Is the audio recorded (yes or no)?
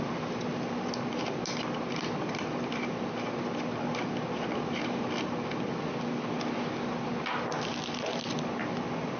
yes